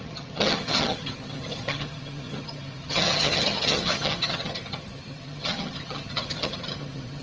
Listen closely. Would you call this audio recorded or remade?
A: remade